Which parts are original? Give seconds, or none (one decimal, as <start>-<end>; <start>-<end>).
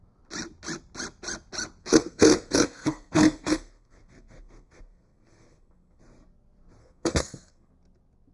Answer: 0.0-1.8; 6.0-6.8; 7.7-8.3